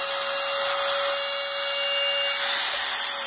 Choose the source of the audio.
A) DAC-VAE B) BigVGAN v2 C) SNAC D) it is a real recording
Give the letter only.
D